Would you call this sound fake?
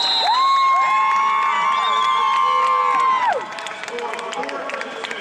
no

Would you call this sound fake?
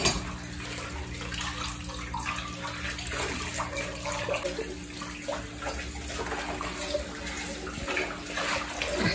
no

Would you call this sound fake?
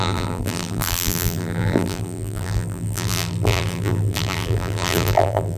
yes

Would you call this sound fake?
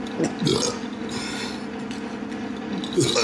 no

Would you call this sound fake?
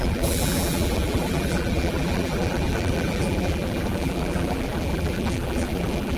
yes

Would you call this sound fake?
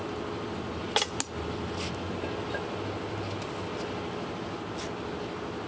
no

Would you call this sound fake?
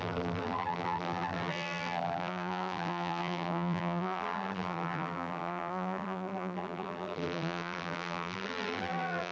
yes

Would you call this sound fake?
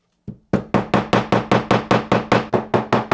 no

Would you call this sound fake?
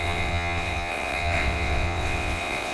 yes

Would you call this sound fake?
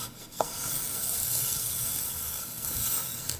yes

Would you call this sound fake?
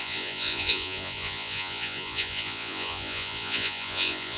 yes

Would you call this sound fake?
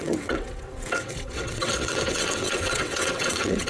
yes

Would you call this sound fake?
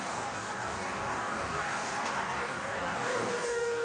yes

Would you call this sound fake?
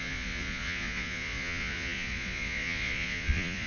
yes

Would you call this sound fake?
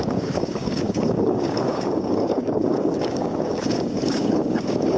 yes